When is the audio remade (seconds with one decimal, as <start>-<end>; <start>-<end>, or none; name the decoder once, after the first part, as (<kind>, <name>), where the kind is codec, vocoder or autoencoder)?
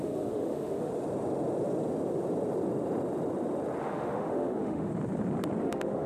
0.0-0.9 (autoencoder, DAC-VAE); 3.8-4.9; 5.6-6.1